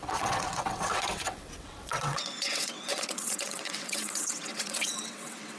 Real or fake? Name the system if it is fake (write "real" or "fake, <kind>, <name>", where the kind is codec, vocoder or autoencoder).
fake, vocoder, WaveNeXt